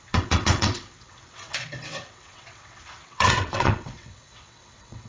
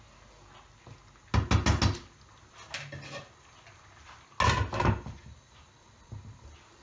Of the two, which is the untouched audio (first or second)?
second